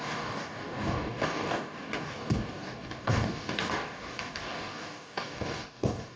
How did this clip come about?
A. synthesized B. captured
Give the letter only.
A